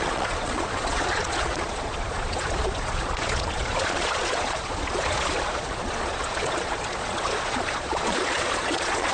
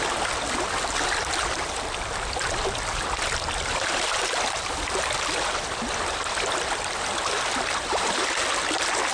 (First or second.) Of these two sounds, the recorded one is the second